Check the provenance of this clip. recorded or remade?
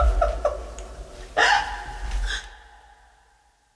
recorded